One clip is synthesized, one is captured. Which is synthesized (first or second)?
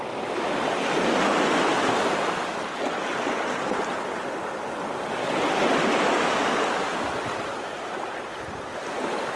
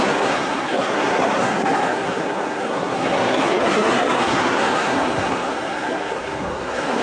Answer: second